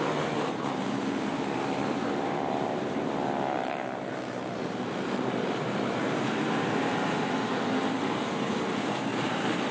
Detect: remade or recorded remade